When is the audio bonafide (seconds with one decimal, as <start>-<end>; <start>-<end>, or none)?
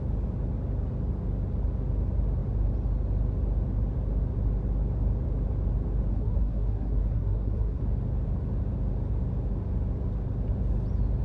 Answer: 0.0-6.1; 7.8-11.2